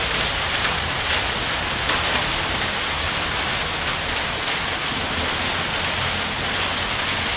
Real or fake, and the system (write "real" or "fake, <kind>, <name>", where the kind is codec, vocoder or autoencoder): real